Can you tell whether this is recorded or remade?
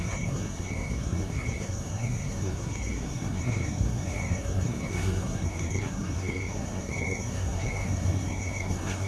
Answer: remade